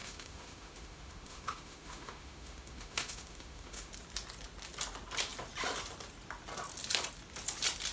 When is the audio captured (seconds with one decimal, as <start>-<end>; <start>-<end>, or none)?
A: 3.9-7.9